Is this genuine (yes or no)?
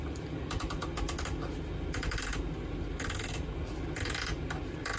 yes